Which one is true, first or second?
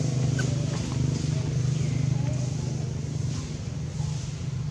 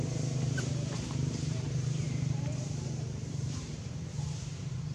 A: first